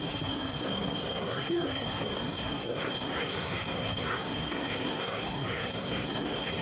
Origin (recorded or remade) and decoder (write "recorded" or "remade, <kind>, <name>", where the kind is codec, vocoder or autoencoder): remade, codec, SNAC